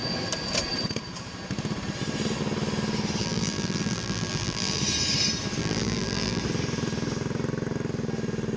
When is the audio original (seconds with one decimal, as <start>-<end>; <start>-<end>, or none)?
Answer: 0.0-3.2; 4.8-5.6; 6.4-8.6